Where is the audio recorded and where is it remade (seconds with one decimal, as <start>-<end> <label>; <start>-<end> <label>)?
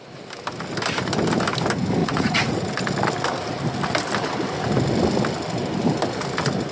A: 0.0-2.0 recorded; 2.0-2.7 remade; 2.7-6.7 recorded